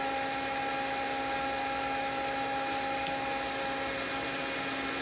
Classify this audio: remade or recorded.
recorded